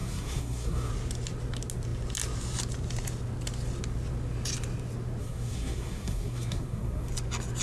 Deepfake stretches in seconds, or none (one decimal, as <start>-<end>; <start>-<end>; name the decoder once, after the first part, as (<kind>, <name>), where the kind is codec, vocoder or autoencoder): 0.0-0.9 (codec, SNAC); 5.2-7.1